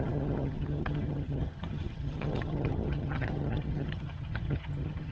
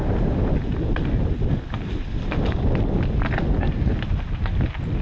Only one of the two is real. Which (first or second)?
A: second